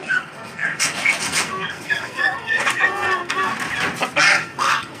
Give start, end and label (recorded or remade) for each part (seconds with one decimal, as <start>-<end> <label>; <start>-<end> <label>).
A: 0.0-3.5 remade; 3.5-4.3 recorded; 4.3-5.0 remade